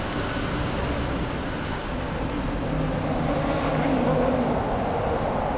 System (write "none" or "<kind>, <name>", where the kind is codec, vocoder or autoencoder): none